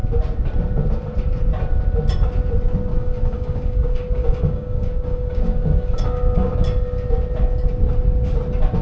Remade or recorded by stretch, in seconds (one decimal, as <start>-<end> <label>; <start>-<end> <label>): 0.0-2.9 recorded; 2.9-6.5 remade; 6.5-8.8 recorded

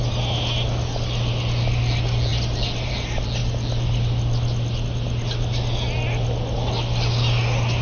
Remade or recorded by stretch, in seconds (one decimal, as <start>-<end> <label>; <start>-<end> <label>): 0.0-7.8 recorded

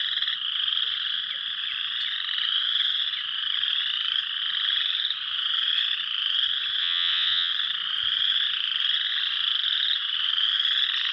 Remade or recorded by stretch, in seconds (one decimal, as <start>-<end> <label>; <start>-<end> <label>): 0.0-6.8 recorded; 6.8-7.5 remade; 7.5-11.1 recorded

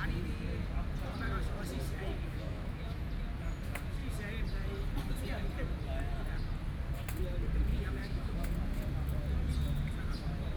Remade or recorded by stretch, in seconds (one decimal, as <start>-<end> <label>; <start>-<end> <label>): 0.0-2.3 recorded; 2.3-3.1 remade; 3.1-7.7 recorded; 7.7-8.5 remade; 8.5-10.6 recorded